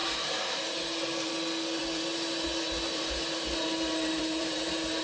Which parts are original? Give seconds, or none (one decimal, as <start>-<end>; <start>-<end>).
1.3-1.8